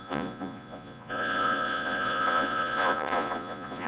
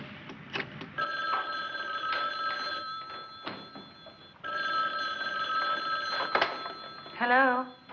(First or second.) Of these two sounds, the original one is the second